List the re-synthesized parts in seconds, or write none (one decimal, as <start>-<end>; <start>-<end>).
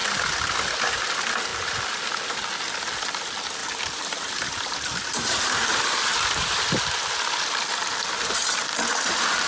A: 3.6-6.6